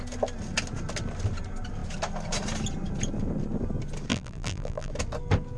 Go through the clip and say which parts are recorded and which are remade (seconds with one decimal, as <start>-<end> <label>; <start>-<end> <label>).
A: 0.0-4.1 recorded; 4.1-4.9 remade; 4.9-5.6 recorded